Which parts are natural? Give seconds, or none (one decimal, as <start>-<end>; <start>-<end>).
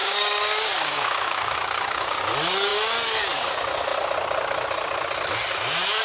2.2-6.0